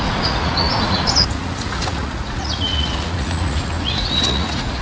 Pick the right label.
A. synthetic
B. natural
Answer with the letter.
A